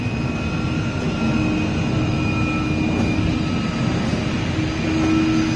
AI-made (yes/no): no